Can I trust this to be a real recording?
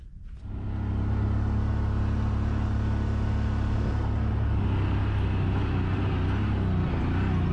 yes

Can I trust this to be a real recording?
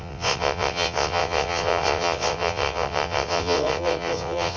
no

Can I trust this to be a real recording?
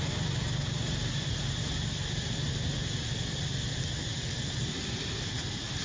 yes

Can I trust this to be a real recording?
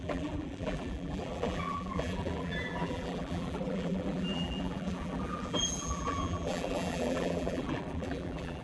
no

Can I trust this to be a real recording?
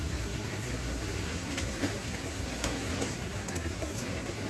no